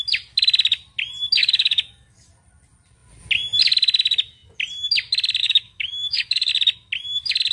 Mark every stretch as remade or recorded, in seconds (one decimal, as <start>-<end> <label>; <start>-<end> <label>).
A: 0.0-1.4 recorded; 1.4-2.3 remade; 2.3-5.4 recorded; 5.4-6.5 remade; 6.5-7.5 recorded